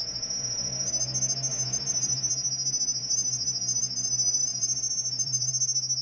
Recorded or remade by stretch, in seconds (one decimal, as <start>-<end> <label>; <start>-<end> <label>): 0.0-0.9 remade; 0.9-1.5 recorded; 1.5-2.3 remade; 2.3-3.0 recorded; 3.0-5.5 remade; 5.5-6.0 recorded